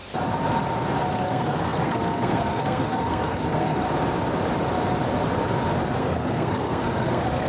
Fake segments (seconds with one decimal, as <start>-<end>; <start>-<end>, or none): 1.1-3.8; 6.0-7.5

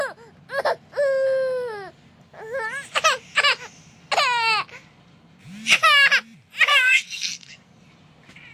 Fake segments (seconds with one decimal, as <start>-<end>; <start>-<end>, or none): 6.7-7.7